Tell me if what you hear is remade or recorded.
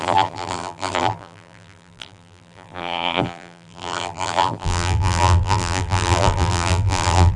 remade